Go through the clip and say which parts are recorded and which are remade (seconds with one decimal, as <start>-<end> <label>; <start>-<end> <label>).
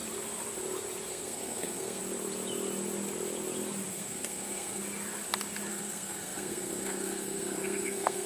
0.0-1.1 recorded; 1.1-2.0 remade; 2.0-3.9 recorded; 3.9-4.8 remade; 4.8-5.7 recorded; 5.7-8.3 remade